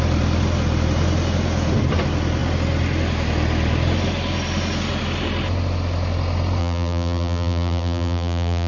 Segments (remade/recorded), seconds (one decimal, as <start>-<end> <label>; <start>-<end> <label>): 0.0-6.6 recorded; 6.6-8.7 remade